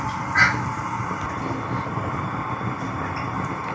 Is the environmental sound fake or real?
real